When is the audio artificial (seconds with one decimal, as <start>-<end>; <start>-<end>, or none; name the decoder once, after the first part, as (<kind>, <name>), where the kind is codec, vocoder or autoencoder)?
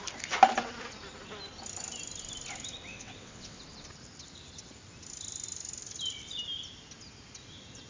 2.9-3.6 (vocoder, WaveNeXt)